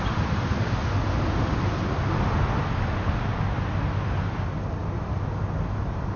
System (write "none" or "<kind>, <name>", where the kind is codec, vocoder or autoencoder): none